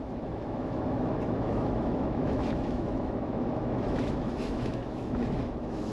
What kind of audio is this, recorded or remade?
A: remade